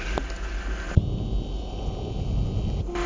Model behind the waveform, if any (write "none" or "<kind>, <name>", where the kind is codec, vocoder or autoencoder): none